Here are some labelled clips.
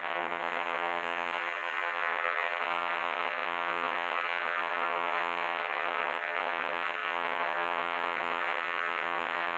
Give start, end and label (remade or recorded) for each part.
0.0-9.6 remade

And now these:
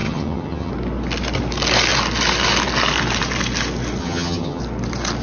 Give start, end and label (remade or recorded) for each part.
0.0-0.7 remade; 0.7-4.0 recorded; 4.0-4.6 remade; 4.6-5.2 recorded

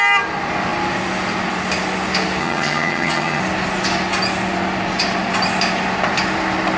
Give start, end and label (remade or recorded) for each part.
0.0-2.4 recorded; 2.4-3.4 remade; 3.4-6.8 recorded

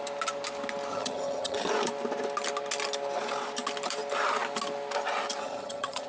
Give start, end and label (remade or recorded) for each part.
0.0-0.9 recorded; 0.9-1.7 remade; 1.7-5.4 recorded; 5.4-6.1 remade

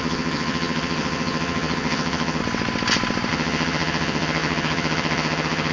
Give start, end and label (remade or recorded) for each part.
0.0-2.4 remade; 2.4-3.3 recorded; 3.3-5.7 remade